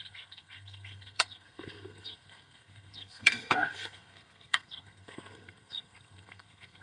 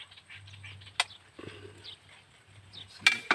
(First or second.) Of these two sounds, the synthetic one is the first